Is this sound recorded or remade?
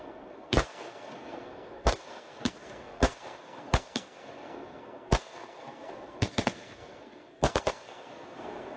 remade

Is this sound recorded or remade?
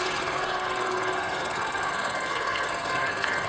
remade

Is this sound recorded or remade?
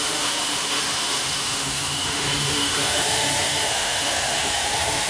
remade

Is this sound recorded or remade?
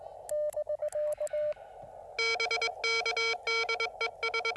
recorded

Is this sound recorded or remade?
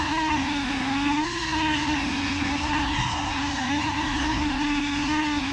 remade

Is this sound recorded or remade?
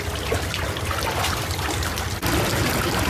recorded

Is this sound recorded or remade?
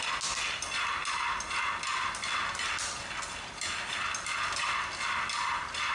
recorded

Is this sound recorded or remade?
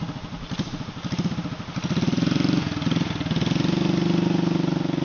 recorded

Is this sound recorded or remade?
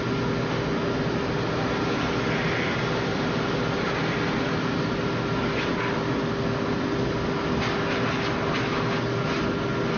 recorded